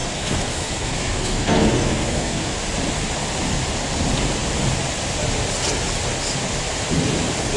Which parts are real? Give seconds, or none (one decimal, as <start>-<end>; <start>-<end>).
2.6-7.6